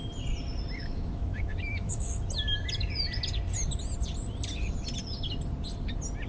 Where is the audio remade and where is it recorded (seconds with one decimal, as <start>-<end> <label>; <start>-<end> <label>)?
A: 0.0-0.8 recorded; 0.8-2.1 remade; 2.1-6.3 recorded

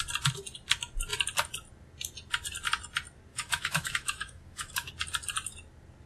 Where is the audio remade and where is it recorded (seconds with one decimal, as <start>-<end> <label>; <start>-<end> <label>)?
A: 0.0-3.3 recorded; 3.3-4.9 remade; 4.9-6.1 recorded